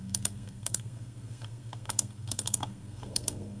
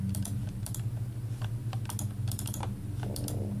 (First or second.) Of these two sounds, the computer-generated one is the first